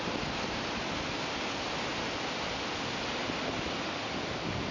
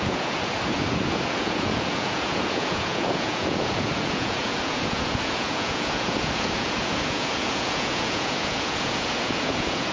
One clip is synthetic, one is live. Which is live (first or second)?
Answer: first